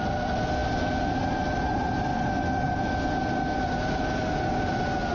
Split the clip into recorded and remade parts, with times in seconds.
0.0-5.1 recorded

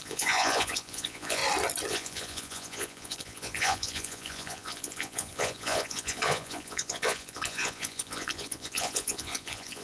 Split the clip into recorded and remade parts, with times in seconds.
0.0-1.4 remade; 1.4-1.9 recorded; 1.9-9.8 remade

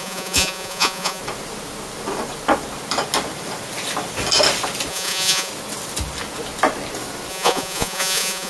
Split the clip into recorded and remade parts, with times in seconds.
0.0-1.2 remade; 1.2-4.9 recorded; 4.9-5.5 remade; 5.5-7.3 recorded; 7.3-8.5 remade

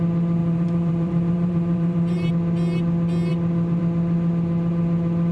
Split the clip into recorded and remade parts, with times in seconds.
0.0-0.4 recorded; 0.4-2.3 remade; 2.3-5.3 recorded

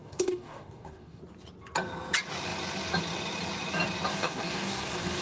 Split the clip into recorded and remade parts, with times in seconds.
0.0-1.2 remade; 1.2-4.1 recorded; 4.1-5.2 remade

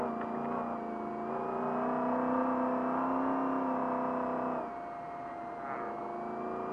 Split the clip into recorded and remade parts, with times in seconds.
0.0-6.7 recorded

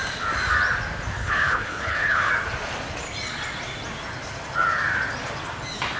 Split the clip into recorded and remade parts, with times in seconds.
0.0-1.2 recorded; 1.2-2.3 remade; 2.3-6.0 recorded

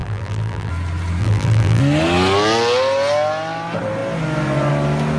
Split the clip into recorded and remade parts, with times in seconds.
0.0-0.7 remade; 0.7-1.2 recorded; 1.2-1.8 remade; 1.8-5.2 recorded